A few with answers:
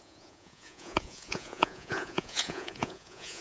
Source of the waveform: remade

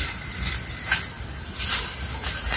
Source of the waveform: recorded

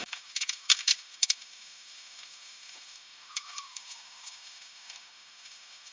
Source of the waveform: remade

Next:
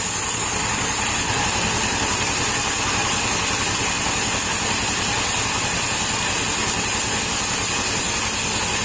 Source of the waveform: recorded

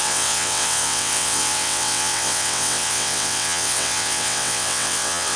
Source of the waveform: remade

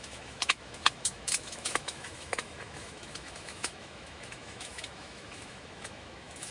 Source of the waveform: remade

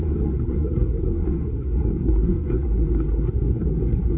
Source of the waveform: remade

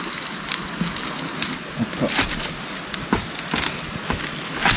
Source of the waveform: recorded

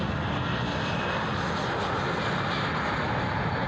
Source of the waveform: recorded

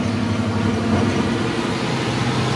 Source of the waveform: recorded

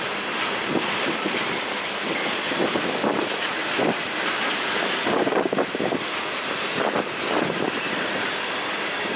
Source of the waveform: recorded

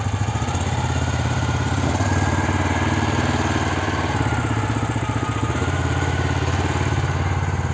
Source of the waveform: remade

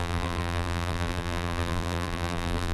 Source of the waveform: remade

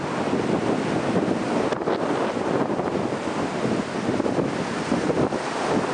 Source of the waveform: recorded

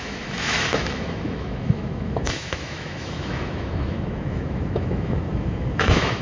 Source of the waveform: remade